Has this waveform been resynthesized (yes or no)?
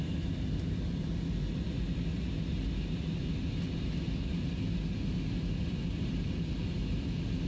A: no